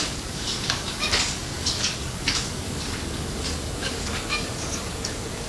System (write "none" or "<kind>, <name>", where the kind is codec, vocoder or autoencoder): codec, DAC